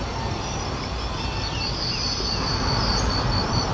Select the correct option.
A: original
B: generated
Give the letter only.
A